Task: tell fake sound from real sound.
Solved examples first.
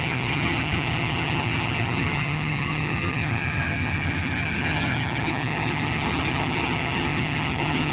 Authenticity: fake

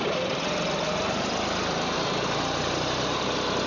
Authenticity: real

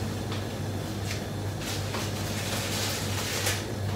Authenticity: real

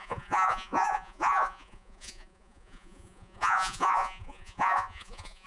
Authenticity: fake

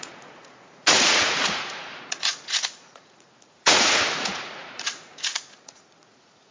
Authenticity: fake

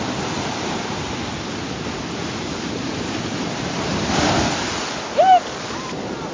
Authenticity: fake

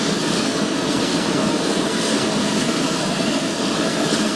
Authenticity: fake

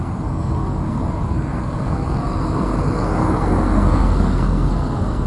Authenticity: fake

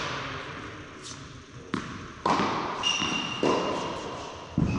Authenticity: real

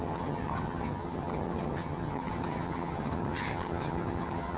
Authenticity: fake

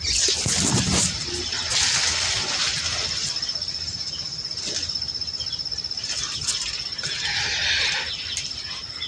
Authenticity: real